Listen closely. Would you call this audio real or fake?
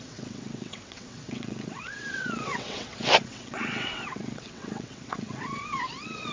fake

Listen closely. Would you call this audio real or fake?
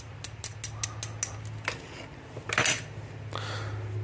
real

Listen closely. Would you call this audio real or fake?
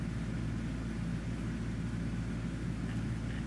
real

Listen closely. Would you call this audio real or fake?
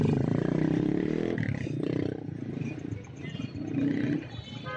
real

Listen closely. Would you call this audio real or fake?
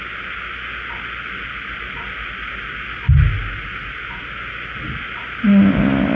real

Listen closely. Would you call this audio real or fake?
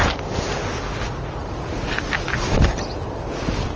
real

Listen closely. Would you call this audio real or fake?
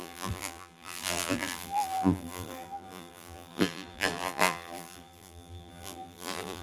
fake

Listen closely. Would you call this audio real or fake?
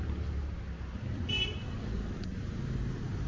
real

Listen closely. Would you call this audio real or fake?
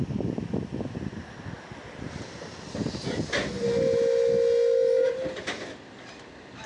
real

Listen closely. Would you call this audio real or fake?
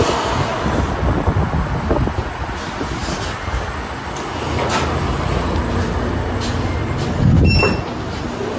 real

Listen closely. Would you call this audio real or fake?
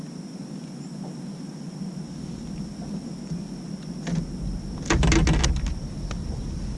real